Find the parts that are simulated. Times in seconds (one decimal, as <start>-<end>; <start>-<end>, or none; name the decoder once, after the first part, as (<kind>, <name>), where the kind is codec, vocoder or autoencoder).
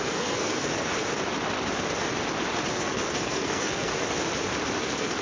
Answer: 0.0-0.9 (codec, SNAC); 2.7-3.9; 4.8-5.2